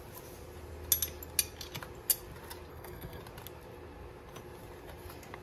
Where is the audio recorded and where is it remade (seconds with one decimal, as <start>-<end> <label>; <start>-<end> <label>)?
0.0-2.7 recorded; 2.7-3.2 remade; 3.2-5.4 recorded